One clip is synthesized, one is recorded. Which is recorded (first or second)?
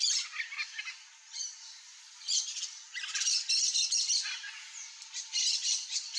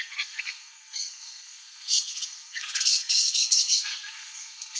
first